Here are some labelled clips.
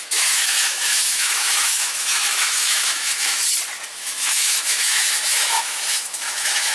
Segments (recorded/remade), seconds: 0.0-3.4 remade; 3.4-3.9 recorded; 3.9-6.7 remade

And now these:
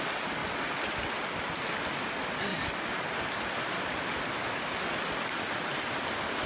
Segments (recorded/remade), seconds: 0.0-6.5 recorded

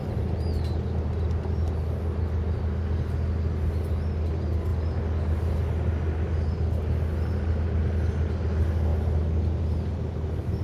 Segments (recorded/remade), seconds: 0.0-10.6 recorded

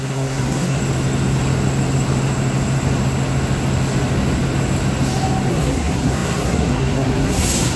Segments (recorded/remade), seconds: 0.0-0.8 remade; 0.8-5.5 recorded; 5.5-7.8 remade

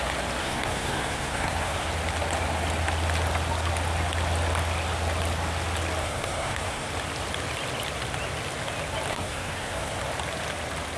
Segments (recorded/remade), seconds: 0.0-0.4 recorded; 0.4-1.9 remade; 1.9-6.0 recorded; 6.0-6.9 remade; 6.9-9.1 recorded; 9.1-10.0 remade; 10.0-11.0 recorded

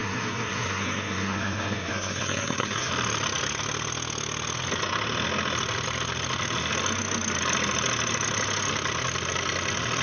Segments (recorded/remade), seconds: 0.0-2.9 remade; 2.9-10.0 recorded

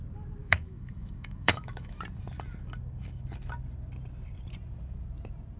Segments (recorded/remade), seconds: 0.0-0.4 recorded; 0.4-2.0 remade; 2.0-5.6 recorded

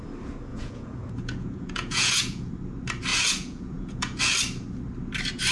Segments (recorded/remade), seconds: 0.0-0.5 recorded; 0.5-2.5 remade; 2.5-3.1 recorded; 3.1-4.2 remade; 4.2-5.5 recorded